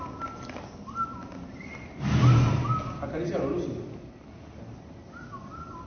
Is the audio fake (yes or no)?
no